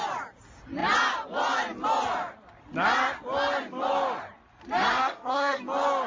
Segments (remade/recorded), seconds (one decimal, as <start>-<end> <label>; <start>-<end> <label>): 0.0-4.9 recorded; 4.9-5.6 remade; 5.6-6.1 recorded